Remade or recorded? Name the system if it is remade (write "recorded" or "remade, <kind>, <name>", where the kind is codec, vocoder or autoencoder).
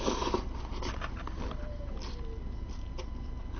recorded